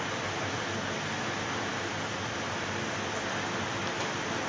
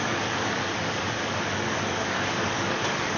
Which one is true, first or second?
first